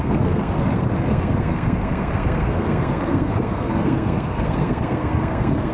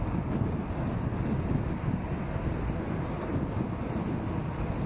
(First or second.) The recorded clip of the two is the second